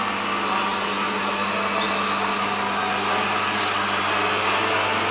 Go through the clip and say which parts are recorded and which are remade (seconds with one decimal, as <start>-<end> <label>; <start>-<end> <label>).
0.0-5.1 recorded